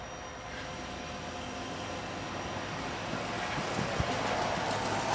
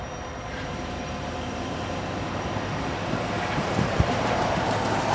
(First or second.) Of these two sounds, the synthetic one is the second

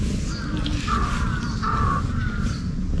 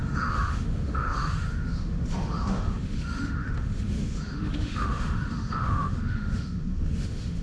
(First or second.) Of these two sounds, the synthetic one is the second